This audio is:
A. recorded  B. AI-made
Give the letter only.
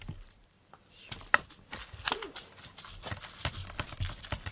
A